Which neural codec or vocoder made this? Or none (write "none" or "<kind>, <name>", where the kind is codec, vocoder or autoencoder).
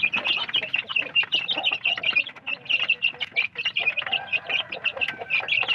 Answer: none